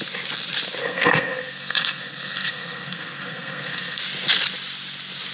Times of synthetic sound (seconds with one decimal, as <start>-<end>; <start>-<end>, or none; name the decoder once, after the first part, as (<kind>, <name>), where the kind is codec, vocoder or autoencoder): 0.8-4.0 (codec, SNAC)